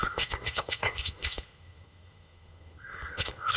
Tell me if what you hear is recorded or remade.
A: remade